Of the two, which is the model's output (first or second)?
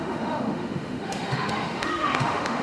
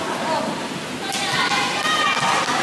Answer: first